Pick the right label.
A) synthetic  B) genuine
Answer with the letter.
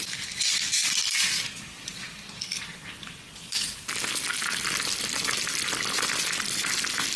B